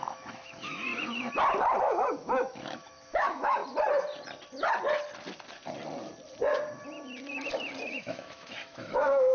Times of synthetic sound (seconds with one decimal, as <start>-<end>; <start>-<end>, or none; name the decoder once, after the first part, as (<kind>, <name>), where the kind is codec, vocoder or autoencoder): 0.0-0.9 (autoencoder, DAC-VAE); 1.8-3.6; 7.9-9.3